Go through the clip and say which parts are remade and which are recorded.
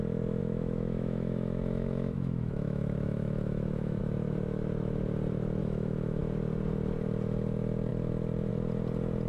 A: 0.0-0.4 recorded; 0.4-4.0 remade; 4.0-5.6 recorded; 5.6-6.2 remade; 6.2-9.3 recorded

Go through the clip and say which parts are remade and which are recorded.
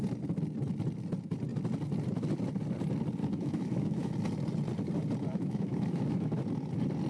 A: 0.0-3.2 recorded; 3.2-4.1 remade; 4.1-5.3 recorded; 5.3-6.4 remade; 6.4-7.1 recorded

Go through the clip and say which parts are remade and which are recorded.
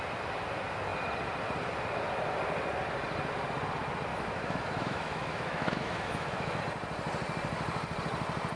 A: 0.0-4.1 recorded; 4.1-6.6 remade; 6.6-8.6 recorded